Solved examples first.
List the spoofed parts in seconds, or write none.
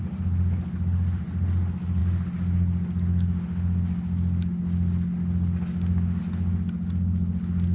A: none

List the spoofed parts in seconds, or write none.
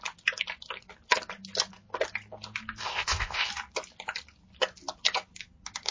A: 2.8-3.5 (codec, ZipCodec)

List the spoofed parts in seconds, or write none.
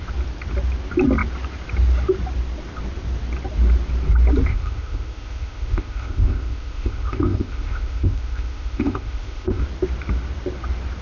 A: 4.5-9.6 (codec, ZipCodec)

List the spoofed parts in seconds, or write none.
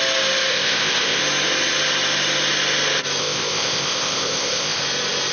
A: 0.5-1.2 (codec, ZipCodec); 3.2-4.8